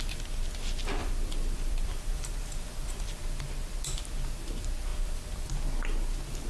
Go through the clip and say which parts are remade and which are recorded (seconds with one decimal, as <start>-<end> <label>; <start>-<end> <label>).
0.0-1.0 recorded; 1.0-3.2 remade; 3.2-4.9 recorded; 4.9-5.5 remade; 5.5-6.5 recorded